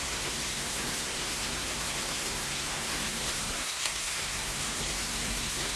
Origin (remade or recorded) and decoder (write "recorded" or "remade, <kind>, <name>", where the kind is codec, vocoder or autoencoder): remade, codec, SNAC